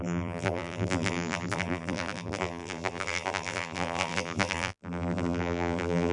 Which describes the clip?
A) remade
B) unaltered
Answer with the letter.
A